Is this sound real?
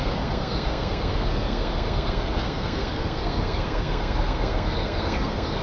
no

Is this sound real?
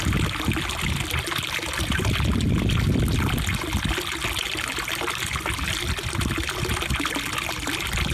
yes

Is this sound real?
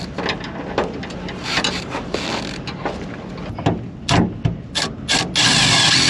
yes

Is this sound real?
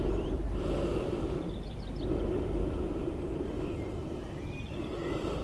yes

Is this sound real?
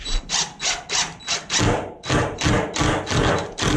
yes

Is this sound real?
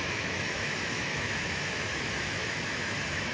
no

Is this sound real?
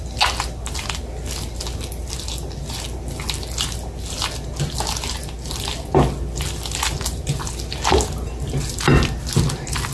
yes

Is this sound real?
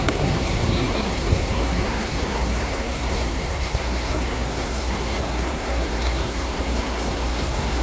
no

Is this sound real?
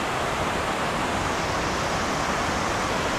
yes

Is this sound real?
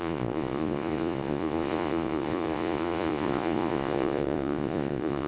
no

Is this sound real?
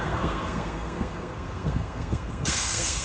no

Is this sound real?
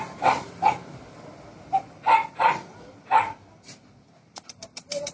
yes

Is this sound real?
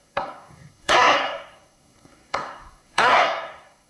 no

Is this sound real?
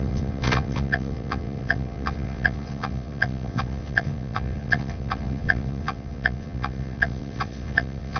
no